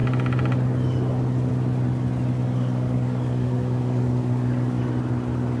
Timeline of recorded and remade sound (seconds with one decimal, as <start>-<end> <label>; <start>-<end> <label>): 0.0-2.4 recorded; 2.4-4.8 remade; 4.8-5.6 recorded